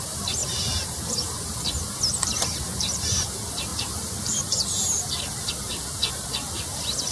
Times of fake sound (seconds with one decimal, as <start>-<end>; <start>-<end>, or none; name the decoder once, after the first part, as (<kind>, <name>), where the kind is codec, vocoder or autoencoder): 0.4-0.9 (vocoder, BigVGAN v2); 3.7-5.5